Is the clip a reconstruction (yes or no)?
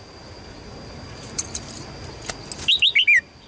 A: no